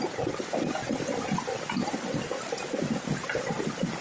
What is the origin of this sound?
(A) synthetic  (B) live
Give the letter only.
B